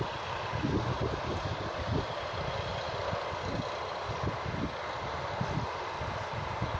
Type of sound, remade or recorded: recorded